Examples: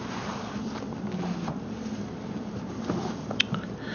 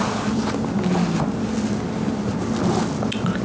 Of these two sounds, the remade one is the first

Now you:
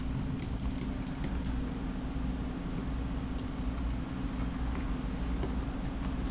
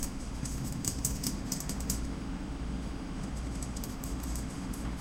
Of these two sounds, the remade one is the second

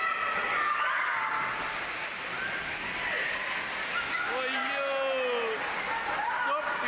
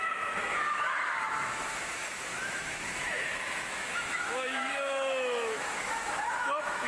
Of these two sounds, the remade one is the second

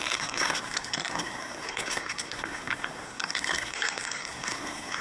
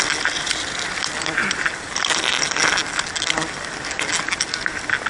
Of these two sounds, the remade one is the first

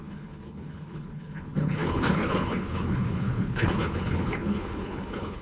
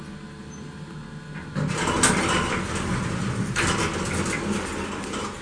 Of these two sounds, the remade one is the first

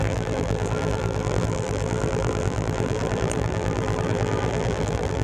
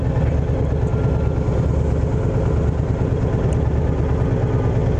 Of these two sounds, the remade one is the first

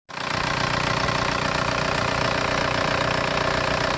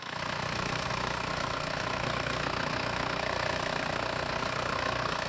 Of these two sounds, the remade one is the second